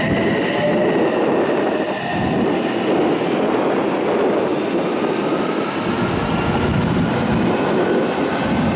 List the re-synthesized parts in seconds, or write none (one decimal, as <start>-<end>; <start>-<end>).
none